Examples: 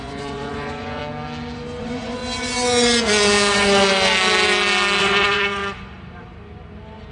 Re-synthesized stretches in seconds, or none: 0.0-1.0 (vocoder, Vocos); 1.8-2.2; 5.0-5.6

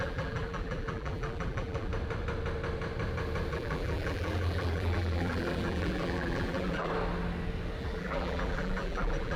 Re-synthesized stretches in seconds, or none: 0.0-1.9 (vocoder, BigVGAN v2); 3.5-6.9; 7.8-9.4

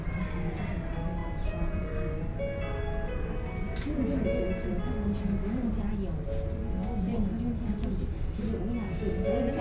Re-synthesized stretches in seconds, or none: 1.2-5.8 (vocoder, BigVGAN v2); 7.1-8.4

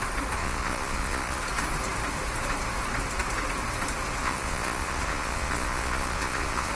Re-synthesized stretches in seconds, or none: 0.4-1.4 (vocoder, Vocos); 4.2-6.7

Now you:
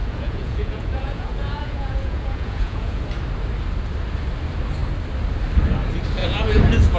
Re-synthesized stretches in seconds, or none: 0.0-3.0 (vocoder, Vocos); 6.2-7.0

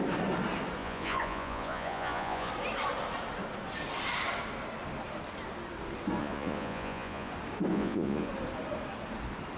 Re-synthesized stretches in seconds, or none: 0.8-2.5 (vocoder, Vocos); 6.2-7.3; 7.7-8.3